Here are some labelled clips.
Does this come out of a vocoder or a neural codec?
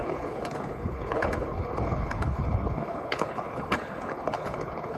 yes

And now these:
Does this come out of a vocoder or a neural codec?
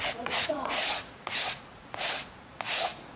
yes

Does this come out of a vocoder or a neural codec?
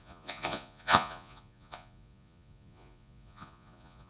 yes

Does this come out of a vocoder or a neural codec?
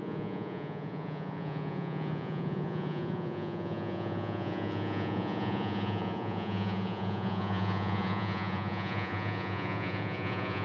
yes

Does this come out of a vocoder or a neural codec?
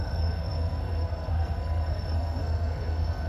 yes